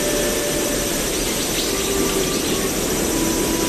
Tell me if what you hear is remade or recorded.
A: recorded